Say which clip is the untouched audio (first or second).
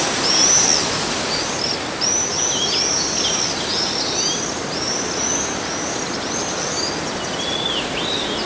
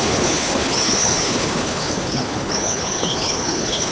first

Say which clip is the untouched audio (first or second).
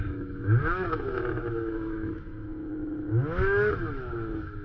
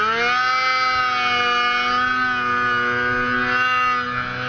second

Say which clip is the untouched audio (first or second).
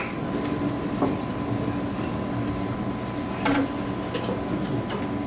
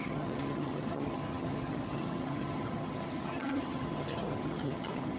first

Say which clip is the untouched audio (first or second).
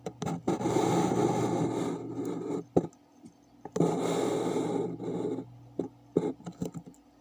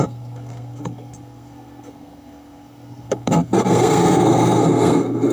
first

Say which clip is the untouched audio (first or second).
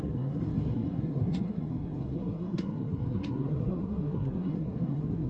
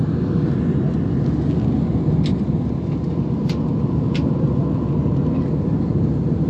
second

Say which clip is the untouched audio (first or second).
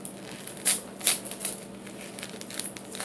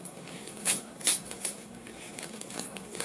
first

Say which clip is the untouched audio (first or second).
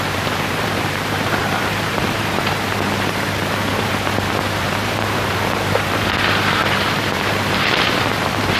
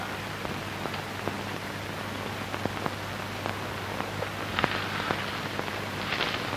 second